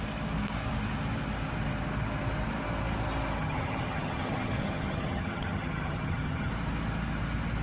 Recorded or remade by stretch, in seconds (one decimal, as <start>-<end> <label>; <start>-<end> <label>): 0.0-3.4 recorded; 3.4-6.5 remade; 6.5-7.6 recorded